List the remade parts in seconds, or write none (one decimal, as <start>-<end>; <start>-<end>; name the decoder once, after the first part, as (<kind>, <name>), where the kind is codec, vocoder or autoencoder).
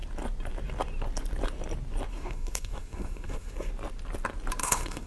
2.1-3.7 (codec, SNAC); 4.6-5.1